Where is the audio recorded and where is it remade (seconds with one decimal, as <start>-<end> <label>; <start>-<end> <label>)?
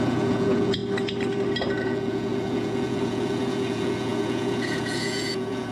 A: 0.0-0.8 remade; 0.8-1.8 recorded; 1.8-5.7 remade